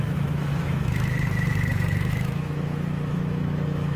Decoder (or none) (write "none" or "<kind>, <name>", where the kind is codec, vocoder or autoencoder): autoencoder, DAC-VAE